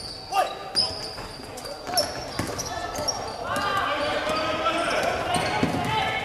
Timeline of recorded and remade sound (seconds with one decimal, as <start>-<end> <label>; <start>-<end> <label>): 0.0-6.2 recorded